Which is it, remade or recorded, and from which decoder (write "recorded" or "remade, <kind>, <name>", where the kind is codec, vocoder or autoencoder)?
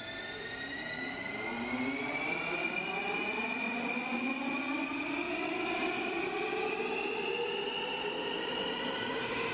recorded